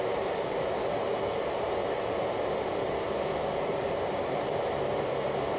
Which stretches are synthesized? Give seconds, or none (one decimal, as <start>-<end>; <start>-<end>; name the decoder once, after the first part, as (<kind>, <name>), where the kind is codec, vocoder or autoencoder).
0.0-5.6 (vocoder, BigVGAN v2)